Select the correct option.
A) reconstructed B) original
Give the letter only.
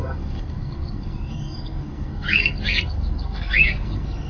A